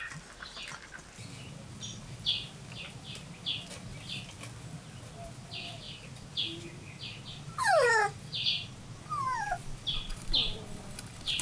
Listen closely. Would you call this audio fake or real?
real